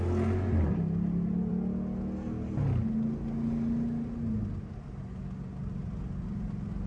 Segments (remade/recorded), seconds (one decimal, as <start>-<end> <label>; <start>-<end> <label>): 0.0-6.9 recorded